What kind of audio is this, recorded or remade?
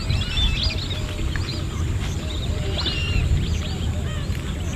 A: recorded